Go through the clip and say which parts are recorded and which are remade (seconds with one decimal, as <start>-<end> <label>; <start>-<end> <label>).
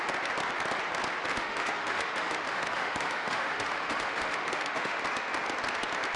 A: 0.0-1.3 recorded; 1.3-5.0 remade; 5.0-6.2 recorded